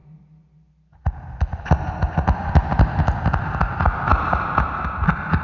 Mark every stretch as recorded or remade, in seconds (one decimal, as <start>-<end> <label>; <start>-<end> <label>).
0.0-5.4 recorded